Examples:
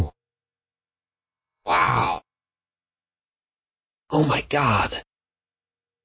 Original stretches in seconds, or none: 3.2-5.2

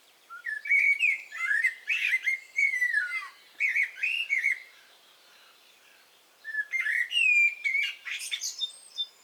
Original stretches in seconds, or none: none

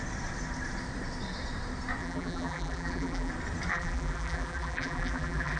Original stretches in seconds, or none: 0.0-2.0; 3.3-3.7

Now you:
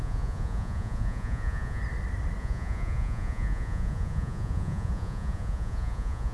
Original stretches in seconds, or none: 1.8-2.4

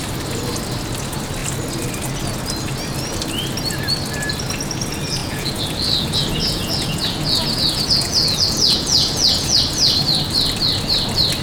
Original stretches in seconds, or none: 0.0-5.2; 9.6-11.4

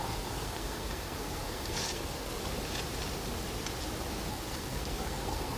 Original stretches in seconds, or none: 2.4-4.3